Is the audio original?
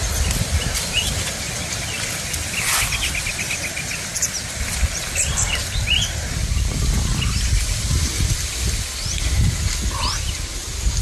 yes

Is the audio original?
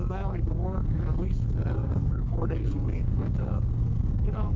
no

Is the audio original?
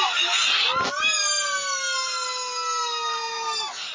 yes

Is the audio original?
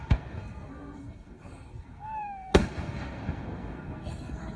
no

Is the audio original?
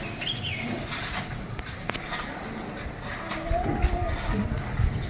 yes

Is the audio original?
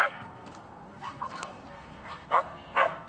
no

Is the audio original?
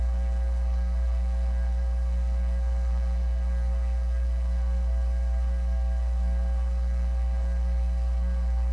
no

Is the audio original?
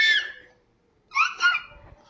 yes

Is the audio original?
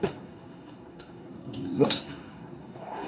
no